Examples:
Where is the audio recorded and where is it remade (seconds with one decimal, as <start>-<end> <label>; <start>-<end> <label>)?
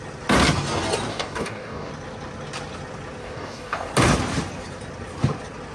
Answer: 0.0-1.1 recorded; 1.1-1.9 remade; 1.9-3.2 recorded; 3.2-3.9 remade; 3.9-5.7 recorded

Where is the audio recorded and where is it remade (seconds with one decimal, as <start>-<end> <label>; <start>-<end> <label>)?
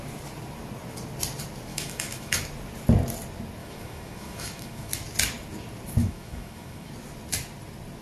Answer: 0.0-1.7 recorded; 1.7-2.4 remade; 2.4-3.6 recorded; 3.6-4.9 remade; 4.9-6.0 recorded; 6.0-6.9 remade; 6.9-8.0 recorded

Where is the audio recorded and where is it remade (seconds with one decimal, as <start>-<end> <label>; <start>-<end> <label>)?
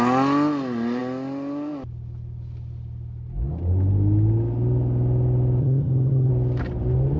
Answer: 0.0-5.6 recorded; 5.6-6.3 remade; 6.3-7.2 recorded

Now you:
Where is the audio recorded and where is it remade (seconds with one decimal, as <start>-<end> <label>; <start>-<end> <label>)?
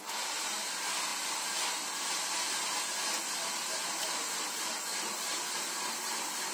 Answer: 0.0-4.9 recorded; 4.9-5.5 remade; 5.5-6.5 recorded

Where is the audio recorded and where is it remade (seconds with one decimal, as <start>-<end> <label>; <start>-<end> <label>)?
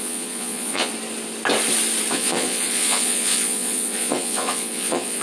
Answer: 0.0-0.9 remade; 0.9-2.1 recorded; 2.1-5.2 remade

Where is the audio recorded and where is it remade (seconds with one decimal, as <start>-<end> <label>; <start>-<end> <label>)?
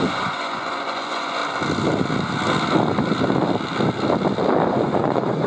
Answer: 0.0-1.4 remade; 1.4-4.7 recorded; 4.7-5.5 remade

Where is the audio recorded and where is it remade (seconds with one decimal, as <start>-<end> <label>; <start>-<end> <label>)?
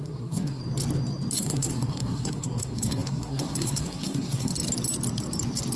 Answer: 0.0-0.6 remade; 0.6-1.4 recorded; 1.4-4.5 remade; 4.5-5.8 recorded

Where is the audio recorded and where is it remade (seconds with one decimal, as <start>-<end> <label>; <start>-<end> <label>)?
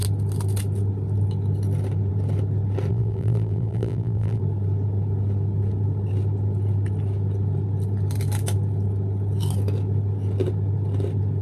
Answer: 0.0-2.9 recorded; 2.9-4.4 remade; 4.4-11.4 recorded